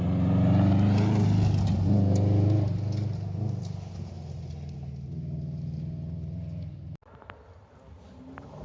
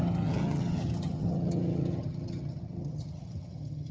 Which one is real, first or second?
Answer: first